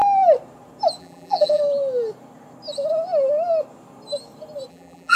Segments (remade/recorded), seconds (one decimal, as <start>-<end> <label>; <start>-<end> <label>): 0.0-1.0 recorded; 1.0-1.6 remade; 1.6-4.7 recorded; 4.7-5.2 remade